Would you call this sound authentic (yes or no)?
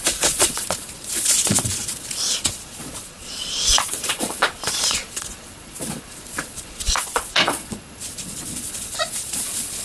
no